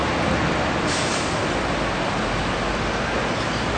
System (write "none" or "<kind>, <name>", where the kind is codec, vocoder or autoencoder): none